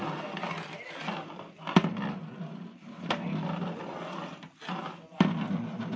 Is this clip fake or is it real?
real